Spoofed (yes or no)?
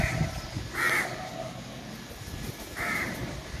no